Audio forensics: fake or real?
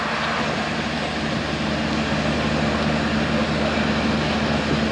real